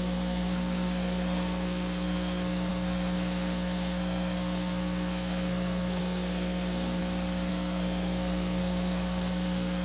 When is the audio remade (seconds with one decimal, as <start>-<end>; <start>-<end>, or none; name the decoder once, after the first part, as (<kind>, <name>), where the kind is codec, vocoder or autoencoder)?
0.0-7.0 (codec, SNAC); 7.5-9.8